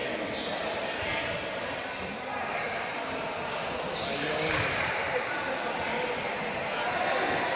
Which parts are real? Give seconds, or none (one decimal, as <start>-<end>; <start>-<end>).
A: 0.0-7.6